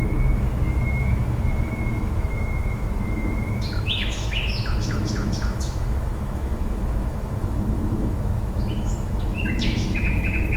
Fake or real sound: fake